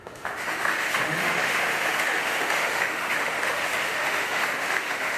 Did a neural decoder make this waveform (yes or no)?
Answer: yes